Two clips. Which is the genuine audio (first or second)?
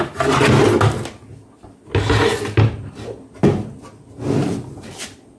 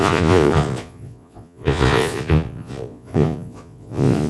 first